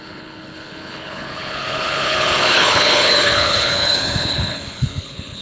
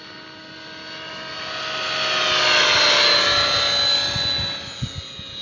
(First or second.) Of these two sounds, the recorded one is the second